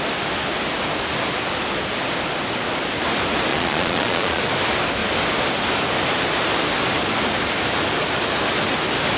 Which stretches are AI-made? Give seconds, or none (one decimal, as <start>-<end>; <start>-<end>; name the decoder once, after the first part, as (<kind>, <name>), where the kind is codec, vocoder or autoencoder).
3.5-4.4 (vocoder, Vocos)